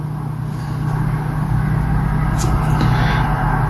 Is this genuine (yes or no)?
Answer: yes